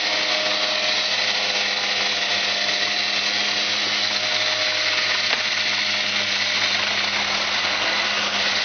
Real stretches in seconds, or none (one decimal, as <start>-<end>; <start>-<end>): 0.0-8.6